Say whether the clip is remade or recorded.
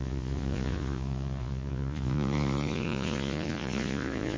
remade